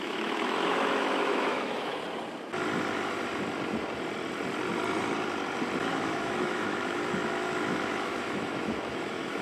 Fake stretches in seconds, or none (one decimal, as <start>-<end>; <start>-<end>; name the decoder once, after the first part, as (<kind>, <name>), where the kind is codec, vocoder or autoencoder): 0.0-1.9 (autoencoder, DAC-VAE); 5.9-9.4